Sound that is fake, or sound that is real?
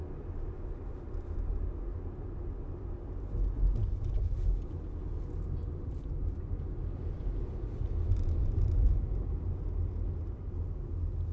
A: real